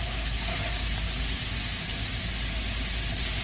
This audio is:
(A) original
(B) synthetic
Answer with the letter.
A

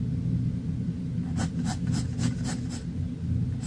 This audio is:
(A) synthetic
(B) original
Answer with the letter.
B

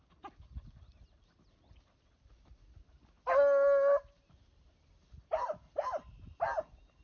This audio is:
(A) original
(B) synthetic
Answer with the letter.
A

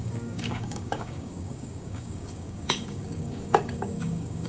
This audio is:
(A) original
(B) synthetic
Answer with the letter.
B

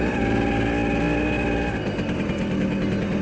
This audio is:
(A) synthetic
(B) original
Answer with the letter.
B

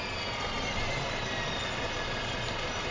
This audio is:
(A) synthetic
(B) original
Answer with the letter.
B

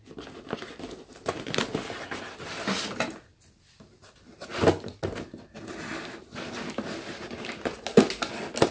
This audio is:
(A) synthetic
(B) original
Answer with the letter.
B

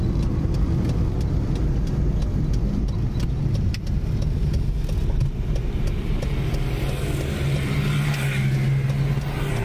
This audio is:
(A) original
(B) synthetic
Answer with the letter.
A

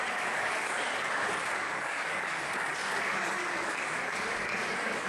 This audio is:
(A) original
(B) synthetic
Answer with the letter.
B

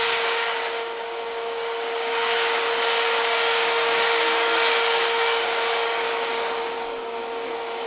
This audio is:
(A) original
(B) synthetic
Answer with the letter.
B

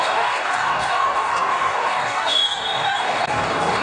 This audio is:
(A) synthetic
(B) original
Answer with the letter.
A